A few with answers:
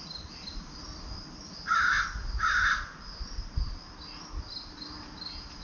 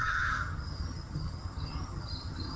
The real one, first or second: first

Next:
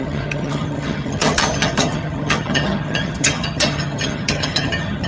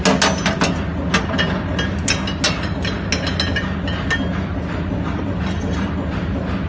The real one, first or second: second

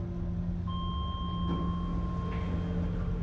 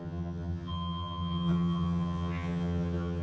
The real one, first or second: first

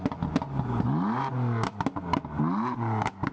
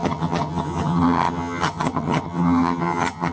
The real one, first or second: first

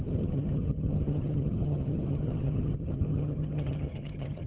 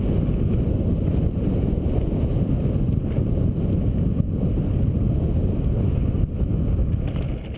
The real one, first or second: second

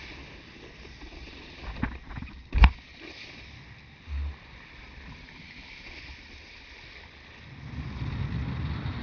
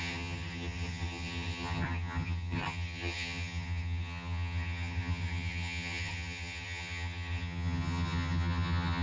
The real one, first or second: first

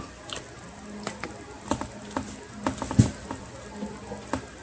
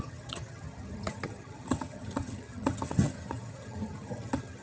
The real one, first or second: first